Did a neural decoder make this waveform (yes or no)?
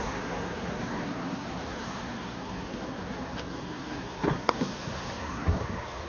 yes